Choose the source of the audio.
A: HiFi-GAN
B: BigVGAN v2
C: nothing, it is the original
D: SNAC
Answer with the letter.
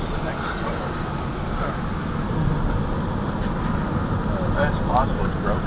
C